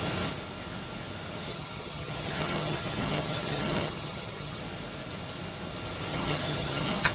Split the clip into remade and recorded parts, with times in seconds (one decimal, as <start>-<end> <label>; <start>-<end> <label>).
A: 0.0-1.5 recorded; 1.5-4.6 remade; 4.6-6.1 recorded; 6.1-7.1 remade